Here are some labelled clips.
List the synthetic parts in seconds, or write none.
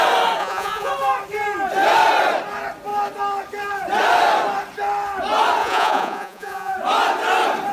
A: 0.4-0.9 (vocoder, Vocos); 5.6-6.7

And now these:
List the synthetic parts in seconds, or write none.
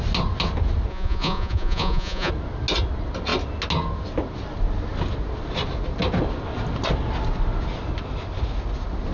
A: 0.9-2.3 (vocoder, Vocos)